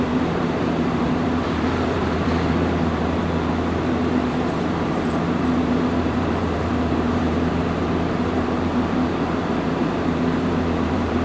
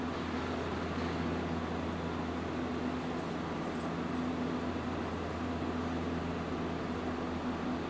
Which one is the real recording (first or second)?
second